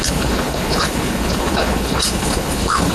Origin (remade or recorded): remade